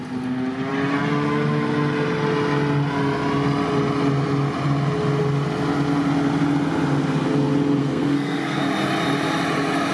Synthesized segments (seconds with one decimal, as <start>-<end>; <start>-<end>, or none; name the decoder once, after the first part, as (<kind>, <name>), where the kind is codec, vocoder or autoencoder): 7.8-8.6 (codec, SNAC)